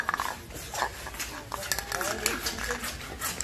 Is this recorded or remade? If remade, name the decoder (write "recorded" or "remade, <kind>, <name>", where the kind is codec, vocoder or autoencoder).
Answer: recorded